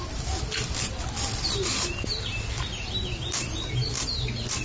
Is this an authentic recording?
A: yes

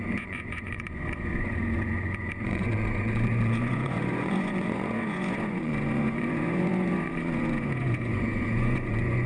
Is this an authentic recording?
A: no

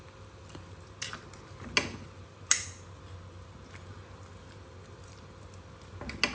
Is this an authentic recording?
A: yes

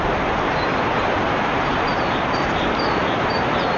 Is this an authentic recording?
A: no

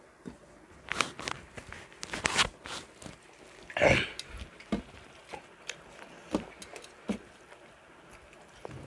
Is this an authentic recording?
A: yes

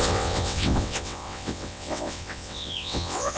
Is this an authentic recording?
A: no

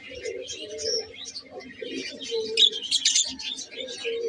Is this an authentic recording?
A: yes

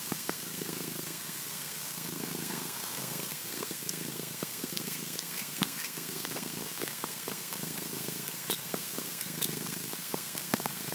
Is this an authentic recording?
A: no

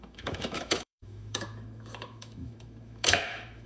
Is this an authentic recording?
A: no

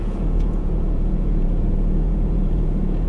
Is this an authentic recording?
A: no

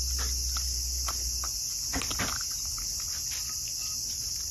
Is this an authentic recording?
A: yes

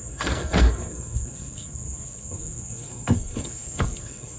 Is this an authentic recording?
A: no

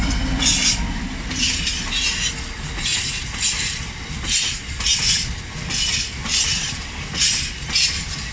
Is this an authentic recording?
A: yes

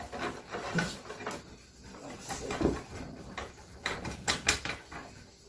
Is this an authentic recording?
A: yes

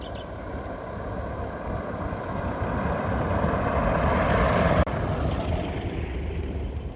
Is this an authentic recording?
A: yes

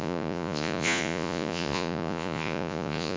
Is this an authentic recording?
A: no